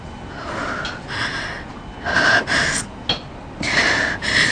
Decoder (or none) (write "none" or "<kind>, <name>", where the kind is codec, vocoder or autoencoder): none